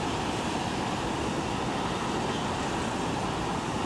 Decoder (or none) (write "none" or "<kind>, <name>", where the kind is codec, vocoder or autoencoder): none